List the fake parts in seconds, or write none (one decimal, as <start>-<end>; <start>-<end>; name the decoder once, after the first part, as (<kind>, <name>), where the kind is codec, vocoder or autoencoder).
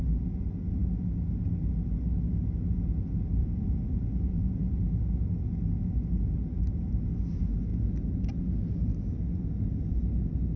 3.4-4.8 (vocoder, Vocos)